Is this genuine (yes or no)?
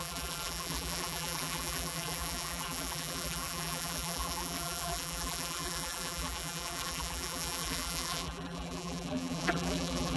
no